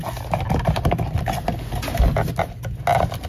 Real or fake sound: real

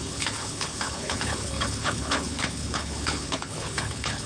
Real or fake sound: fake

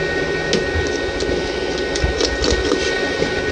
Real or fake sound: real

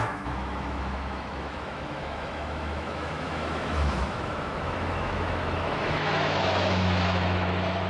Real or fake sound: fake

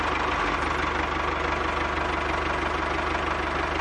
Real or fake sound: real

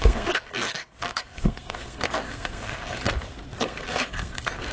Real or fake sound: fake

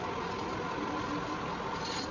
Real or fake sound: real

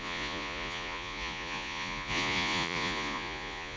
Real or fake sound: fake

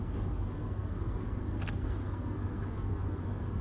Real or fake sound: fake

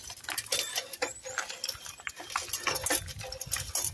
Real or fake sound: real